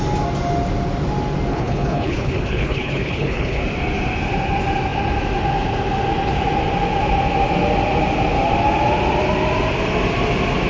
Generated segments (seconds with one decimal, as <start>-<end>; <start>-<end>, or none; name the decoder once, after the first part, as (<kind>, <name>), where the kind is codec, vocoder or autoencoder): 1.5-3.6 (codec, HILCodec)